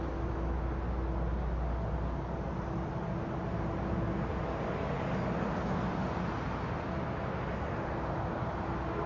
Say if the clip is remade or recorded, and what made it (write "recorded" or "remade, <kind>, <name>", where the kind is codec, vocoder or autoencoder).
recorded